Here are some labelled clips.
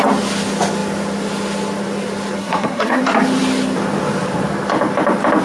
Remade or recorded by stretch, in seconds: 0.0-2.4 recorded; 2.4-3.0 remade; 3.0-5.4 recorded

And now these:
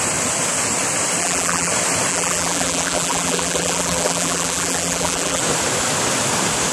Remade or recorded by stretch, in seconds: 0.0-1.2 recorded; 1.2-1.7 remade; 1.7-2.1 recorded; 2.1-5.4 remade; 5.4-6.7 recorded

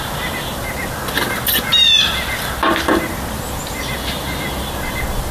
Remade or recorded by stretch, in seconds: 0.0-5.3 recorded

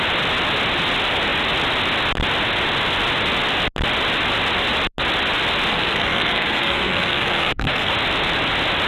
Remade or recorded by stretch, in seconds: 0.0-5.7 recorded; 5.7-7.9 remade; 7.9-8.9 recorded

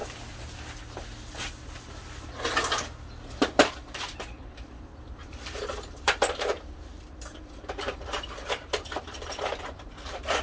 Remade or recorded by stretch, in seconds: 0.0-3.4 recorded; 3.4-10.4 remade

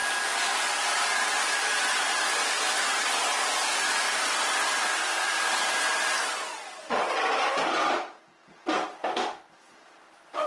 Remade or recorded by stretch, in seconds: 0.0-6.2 recorded; 6.2-7.2 remade; 7.2-10.5 recorded

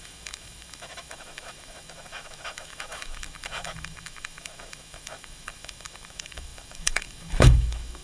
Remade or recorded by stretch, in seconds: 0.0-8.0 remade

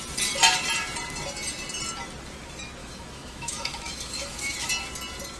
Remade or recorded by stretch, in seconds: 0.0-2.8 recorded; 2.8-4.7 remade; 4.7-5.4 recorded